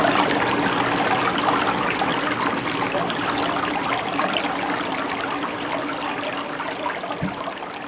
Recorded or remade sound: recorded